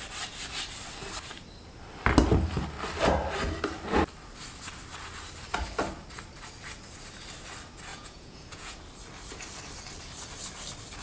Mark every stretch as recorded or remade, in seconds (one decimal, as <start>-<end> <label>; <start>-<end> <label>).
0.0-7.9 recorded; 7.9-8.8 remade; 8.8-11.0 recorded